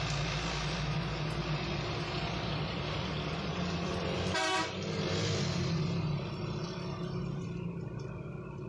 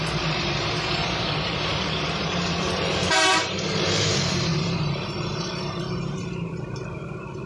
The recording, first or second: first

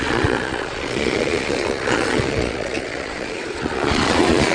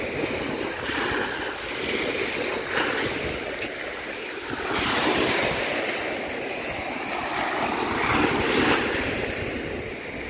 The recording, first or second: second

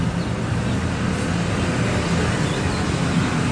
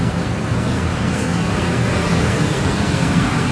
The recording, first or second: first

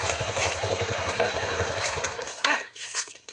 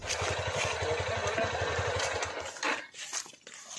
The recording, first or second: second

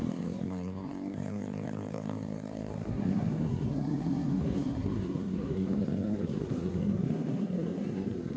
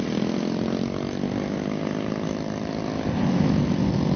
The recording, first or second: second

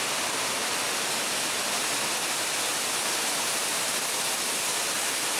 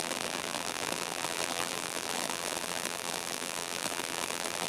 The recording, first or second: first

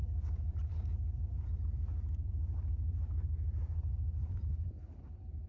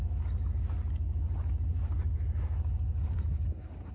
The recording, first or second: second